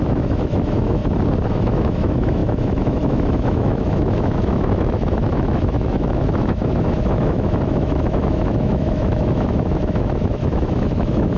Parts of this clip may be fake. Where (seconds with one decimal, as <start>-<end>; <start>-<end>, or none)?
0.0-1.0; 1.5-11.4